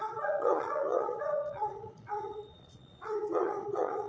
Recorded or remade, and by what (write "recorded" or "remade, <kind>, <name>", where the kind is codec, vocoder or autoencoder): remade, vocoder, Vocos